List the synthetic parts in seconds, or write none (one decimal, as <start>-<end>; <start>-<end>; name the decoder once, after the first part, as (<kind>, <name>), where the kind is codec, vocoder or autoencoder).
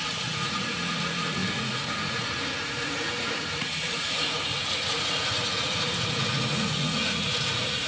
0.0-7.9 (vocoder, Vocos)